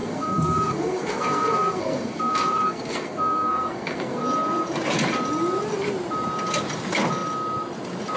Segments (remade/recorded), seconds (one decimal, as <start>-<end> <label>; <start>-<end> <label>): 0.0-4.2 remade; 4.2-8.2 recorded